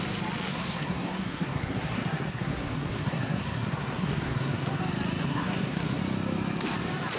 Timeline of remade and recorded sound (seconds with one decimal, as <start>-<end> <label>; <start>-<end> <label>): 0.0-0.5 recorded; 0.5-4.8 remade; 4.8-5.2 recorded; 5.2-6.0 remade; 6.0-7.2 recorded